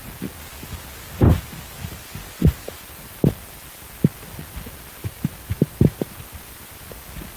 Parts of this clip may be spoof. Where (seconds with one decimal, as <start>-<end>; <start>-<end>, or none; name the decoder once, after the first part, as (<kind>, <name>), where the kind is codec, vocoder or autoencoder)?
5.0-6.1 (vocoder, BigVGAN v2)